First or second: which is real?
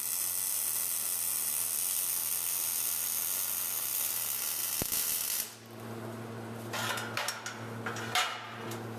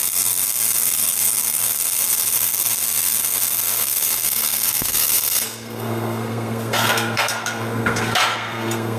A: first